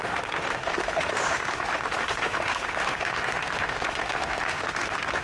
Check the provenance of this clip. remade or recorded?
remade